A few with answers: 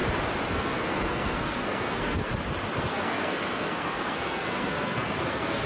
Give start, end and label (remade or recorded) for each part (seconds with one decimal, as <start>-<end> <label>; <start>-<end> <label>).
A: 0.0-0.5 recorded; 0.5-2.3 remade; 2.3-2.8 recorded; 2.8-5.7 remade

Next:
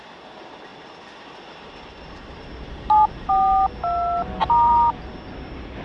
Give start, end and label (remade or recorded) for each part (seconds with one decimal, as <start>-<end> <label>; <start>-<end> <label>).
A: 0.0-0.7 recorded; 0.7-3.3 remade; 3.3-4.4 recorded; 4.4-5.0 remade; 5.0-5.8 recorded

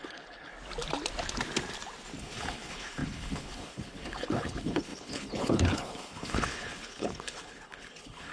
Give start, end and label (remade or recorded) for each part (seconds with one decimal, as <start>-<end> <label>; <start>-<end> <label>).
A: 0.0-0.5 remade; 0.5-2.2 recorded; 2.2-8.3 remade

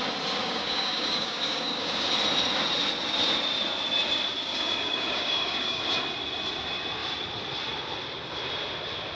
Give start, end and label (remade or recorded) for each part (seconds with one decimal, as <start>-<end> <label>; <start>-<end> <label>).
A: 0.0-0.4 recorded; 0.4-2.1 remade; 2.1-4.5 recorded; 4.5-5.8 remade; 5.8-9.2 recorded

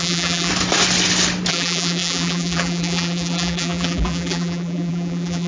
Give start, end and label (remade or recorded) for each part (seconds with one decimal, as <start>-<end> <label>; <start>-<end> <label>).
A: 0.0-0.5 remade; 0.5-1.5 recorded; 1.5-5.5 remade

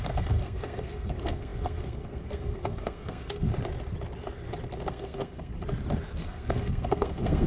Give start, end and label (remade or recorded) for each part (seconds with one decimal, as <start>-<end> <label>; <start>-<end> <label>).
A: 0.0-3.5 remade; 3.5-4.9 recorded; 4.9-5.5 remade; 5.5-6.2 recorded; 6.2-7.5 remade

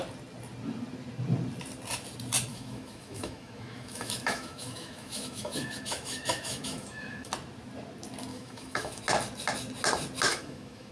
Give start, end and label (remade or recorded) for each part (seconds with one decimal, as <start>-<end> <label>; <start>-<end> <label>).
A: 0.0-2.5 recorded; 2.5-7.3 remade; 7.3-8.3 recorded; 8.3-9.0 remade; 9.0-10.3 recorded; 10.3-10.9 remade

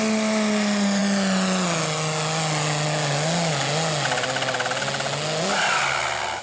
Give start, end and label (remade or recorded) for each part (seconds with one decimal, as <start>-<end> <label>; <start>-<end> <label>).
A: 0.0-6.4 recorded